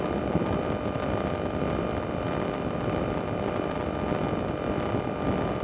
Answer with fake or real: real